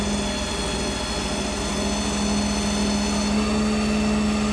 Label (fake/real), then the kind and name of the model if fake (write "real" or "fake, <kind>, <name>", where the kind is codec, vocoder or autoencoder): real